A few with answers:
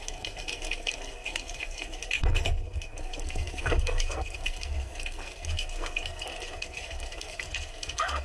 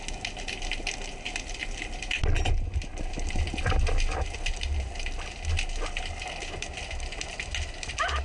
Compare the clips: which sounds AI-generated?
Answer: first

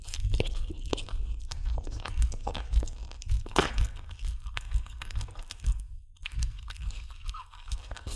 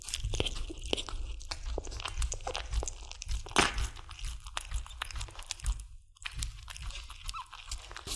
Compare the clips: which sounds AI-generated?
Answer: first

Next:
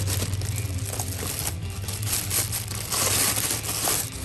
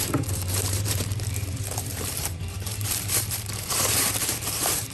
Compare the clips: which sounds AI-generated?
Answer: second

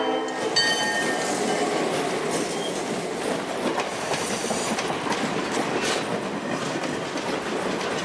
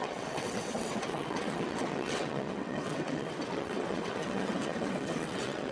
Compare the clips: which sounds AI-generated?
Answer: second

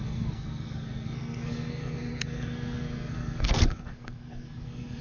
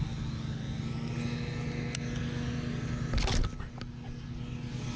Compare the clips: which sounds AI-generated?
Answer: first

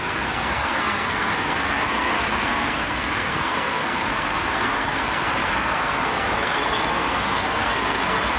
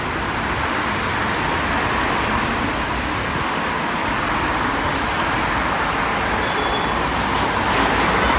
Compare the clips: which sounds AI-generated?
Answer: first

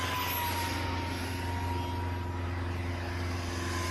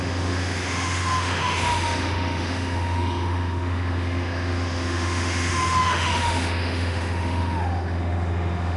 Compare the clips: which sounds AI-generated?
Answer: second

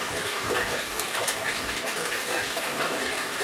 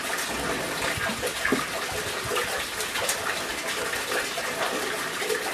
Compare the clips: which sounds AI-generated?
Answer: first